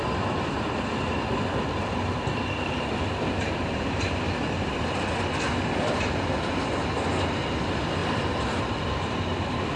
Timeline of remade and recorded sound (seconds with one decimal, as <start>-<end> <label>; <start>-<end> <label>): 0.0-8.0 recorded; 8.0-9.2 remade; 9.2-9.8 recorded